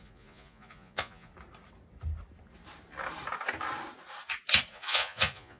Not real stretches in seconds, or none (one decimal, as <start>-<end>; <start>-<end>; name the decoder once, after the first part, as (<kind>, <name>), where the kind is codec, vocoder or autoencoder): 0.0-1.3 (vocoder, Vocos); 4.7-5.6